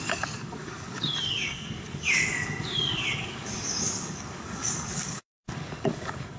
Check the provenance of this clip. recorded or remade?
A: remade